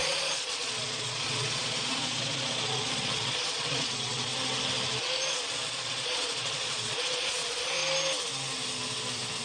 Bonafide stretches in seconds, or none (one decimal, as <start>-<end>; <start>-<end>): 4.3-5.3; 7.8-9.4